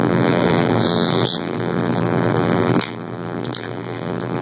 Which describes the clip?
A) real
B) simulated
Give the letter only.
B